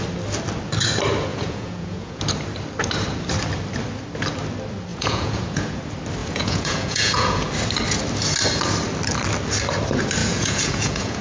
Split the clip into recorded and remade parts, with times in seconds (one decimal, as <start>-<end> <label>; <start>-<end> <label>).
0.0-1.3 recorded; 1.3-2.2 remade; 2.2-4.9 recorded; 4.9-5.8 remade; 5.8-6.2 recorded; 6.2-7.5 remade; 7.5-10.2 recorded; 10.2-11.2 remade